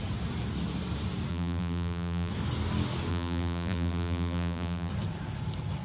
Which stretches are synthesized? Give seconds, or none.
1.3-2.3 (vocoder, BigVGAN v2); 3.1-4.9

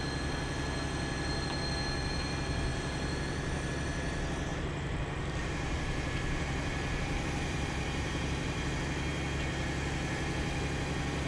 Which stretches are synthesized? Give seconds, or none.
2.7-3.7 (vocoder, BigVGAN v2); 4.5-8.7

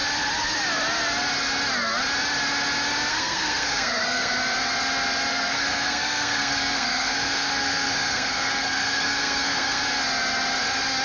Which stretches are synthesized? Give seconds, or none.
3.1-4.3 (codec, SNAC); 5.3-9.8

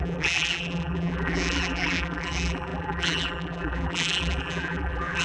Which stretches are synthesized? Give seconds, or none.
0.0-5.2 (vocoder, BigVGAN v2)

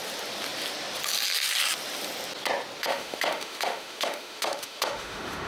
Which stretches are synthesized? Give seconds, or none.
2.8-5.5 (autoencoder, DAC-VAE)

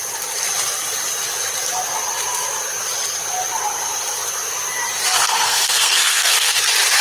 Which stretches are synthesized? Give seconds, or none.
5.2-6.6 (codec, SNAC)

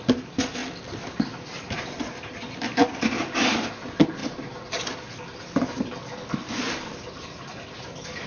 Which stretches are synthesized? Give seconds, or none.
none